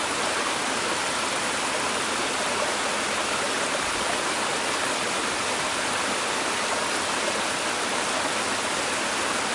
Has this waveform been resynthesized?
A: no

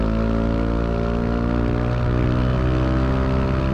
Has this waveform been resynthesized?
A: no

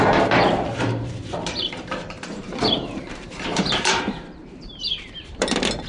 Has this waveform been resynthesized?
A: yes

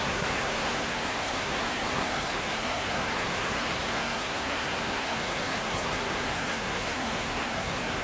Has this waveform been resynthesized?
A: yes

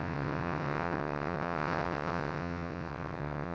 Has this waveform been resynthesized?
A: yes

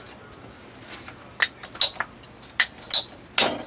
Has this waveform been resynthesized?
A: no